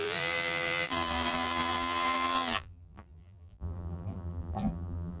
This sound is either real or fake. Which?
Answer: fake